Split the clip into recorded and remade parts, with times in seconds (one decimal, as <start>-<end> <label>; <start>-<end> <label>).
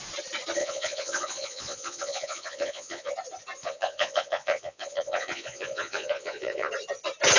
0.0-0.6 recorded; 0.6-3.1 remade; 3.1-3.6 recorded; 3.6-6.7 remade; 6.7-7.4 recorded